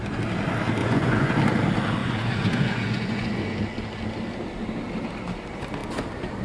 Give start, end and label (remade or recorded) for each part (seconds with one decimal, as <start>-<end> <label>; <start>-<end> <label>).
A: 0.0-0.8 recorded; 0.8-1.4 remade; 1.4-2.0 recorded; 2.0-3.4 remade; 3.4-6.4 recorded